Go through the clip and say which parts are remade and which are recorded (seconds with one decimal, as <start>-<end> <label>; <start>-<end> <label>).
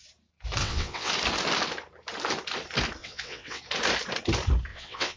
0.0-0.6 recorded; 0.6-1.1 remade; 1.1-3.0 recorded; 3.0-3.6 remade; 3.6-4.7 recorded; 4.7-5.2 remade